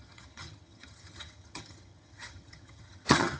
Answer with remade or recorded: remade